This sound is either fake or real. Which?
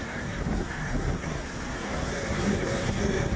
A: fake